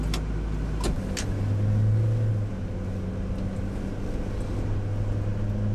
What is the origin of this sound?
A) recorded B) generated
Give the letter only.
A